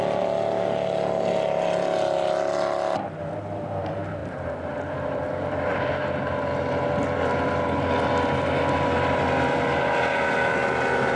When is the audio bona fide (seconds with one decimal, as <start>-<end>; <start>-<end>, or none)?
0.0-4.2; 5.9-11.2